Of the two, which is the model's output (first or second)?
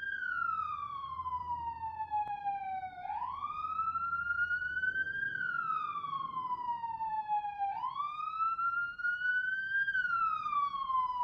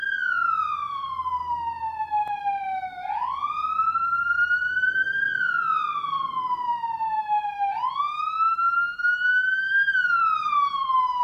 first